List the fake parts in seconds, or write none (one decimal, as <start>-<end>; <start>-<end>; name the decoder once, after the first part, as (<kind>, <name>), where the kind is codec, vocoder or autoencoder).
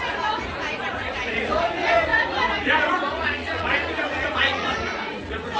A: 0.0-5.6 (vocoder, Vocos)